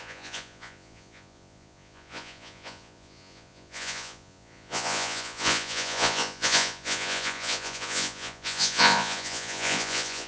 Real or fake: fake